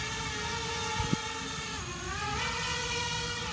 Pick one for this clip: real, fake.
real